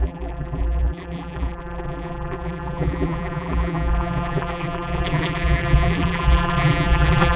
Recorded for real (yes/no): no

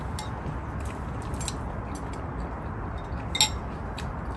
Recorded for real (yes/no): yes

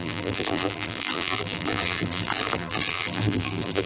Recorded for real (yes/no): no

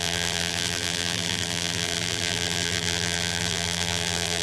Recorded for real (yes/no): no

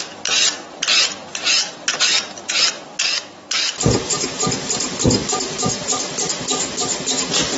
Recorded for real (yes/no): yes